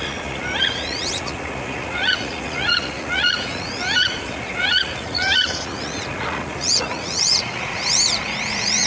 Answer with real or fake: fake